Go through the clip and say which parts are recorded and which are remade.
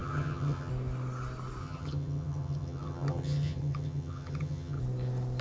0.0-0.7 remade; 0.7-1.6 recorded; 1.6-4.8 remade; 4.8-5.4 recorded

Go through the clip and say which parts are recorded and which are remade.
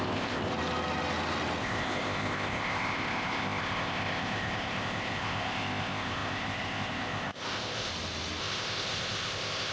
0.0-0.5 remade; 0.5-1.6 recorded; 1.6-7.9 remade; 7.9-8.4 recorded; 8.4-9.7 remade